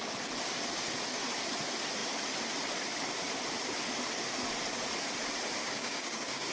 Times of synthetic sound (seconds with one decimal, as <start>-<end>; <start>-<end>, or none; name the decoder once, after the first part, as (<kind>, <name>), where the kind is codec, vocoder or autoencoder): 5.6-6.5 (codec, DAC)